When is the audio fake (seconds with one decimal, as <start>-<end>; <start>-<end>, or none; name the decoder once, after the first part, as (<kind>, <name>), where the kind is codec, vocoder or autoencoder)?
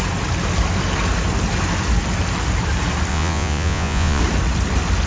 3.1-4.2 (vocoder, Vocos)